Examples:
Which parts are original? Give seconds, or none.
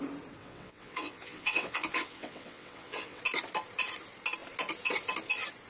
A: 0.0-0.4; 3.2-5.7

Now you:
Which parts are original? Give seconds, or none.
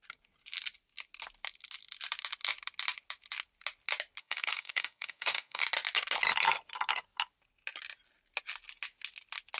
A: 0.0-4.2; 5.6-9.6